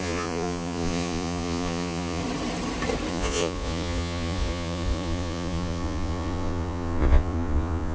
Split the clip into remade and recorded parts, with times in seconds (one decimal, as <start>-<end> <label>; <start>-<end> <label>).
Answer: 0.0-2.2 remade; 2.2-3.1 recorded; 3.1-7.9 remade